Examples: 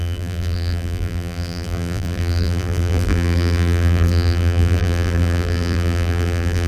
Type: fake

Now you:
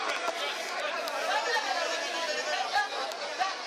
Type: real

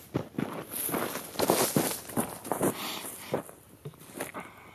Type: real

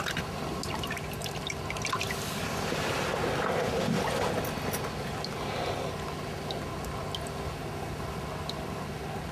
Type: real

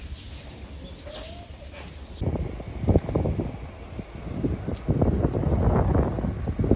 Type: real